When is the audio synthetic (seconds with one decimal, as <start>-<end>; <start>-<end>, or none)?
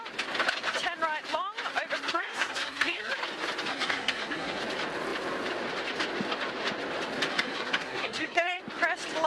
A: 2.1-3.1; 3.7-4.6; 7.3-8.6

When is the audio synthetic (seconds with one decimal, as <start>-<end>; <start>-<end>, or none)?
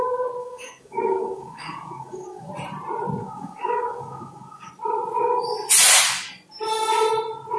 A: 0.4-2.5; 3.2-4.7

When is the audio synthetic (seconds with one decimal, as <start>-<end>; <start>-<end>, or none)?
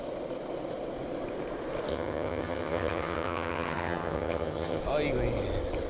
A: 1.9-4.8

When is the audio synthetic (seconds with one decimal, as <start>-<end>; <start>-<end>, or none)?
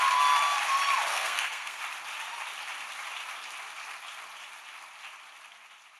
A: 1.1-1.8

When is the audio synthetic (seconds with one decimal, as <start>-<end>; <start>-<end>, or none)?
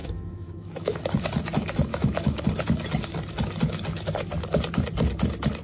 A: 0.0-1.0; 1.9-2.4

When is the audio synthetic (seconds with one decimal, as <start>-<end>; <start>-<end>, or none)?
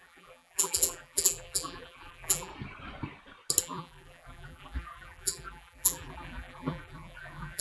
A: 0.0-2.5; 3.6-7.6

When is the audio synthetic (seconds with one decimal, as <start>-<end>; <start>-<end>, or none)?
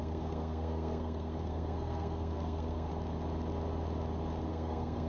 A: 0.0-2.9; 4.5-5.1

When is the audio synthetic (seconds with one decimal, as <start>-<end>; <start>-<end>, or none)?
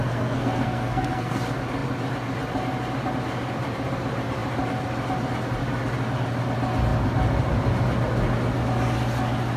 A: 0.0-1.4